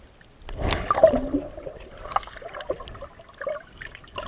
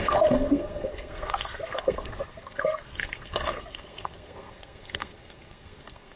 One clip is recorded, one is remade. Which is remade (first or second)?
second